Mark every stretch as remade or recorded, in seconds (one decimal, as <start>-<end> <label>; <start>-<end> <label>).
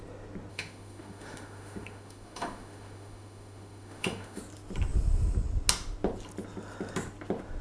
0.0-0.5 recorded; 0.5-4.4 remade; 4.4-7.6 recorded